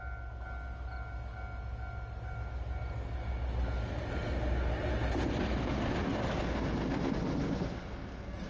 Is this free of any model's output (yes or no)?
yes